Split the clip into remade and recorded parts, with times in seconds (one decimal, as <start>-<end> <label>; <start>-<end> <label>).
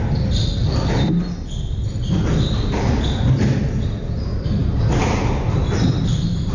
0.0-6.5 recorded